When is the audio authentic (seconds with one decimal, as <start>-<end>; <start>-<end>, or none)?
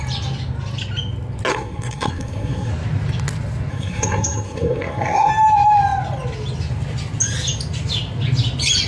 0.0-1.5; 2.7-3.7; 5.3-8.9